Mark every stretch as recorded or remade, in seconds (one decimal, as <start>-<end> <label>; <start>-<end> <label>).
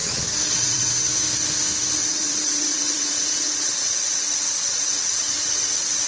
0.0-0.9 remade; 0.9-2.0 recorded; 2.0-6.1 remade